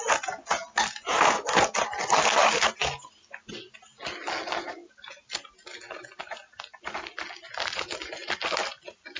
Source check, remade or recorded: recorded